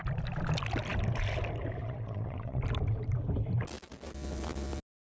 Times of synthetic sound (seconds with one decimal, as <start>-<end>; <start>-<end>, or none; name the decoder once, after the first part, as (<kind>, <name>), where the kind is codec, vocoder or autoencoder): 1.8-2.6 (vocoder, WaveNeXt)